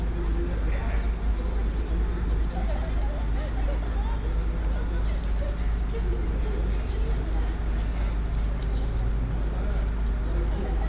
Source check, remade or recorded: recorded